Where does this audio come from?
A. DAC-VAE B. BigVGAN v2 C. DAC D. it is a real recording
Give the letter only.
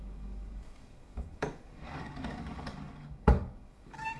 C